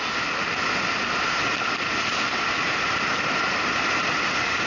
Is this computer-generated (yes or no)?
no